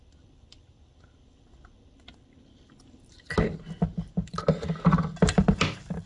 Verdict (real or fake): real